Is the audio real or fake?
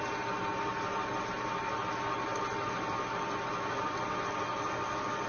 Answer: real